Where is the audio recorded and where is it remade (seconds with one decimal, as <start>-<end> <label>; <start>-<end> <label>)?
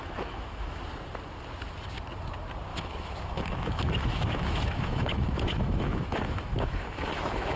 0.0-0.8 remade; 0.8-2.7 recorded; 2.7-7.6 remade